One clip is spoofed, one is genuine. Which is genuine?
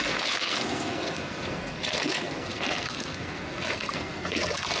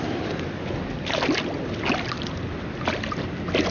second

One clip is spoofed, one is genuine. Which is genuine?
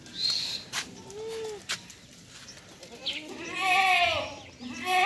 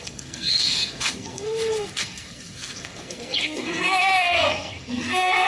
first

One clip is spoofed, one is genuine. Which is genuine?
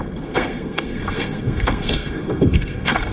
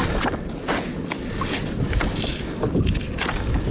second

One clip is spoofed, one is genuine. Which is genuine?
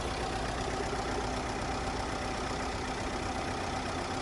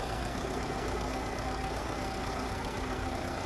first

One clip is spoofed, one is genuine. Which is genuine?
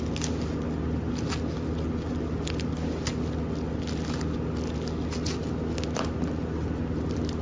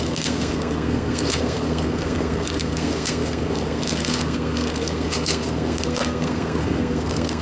first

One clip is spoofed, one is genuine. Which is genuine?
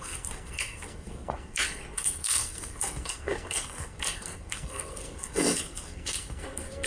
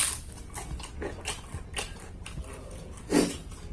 second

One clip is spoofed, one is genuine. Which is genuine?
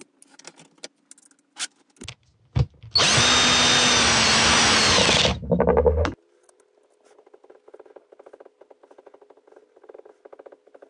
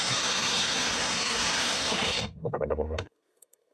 first